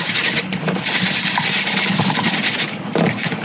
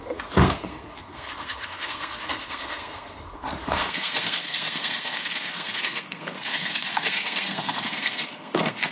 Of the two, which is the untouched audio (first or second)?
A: first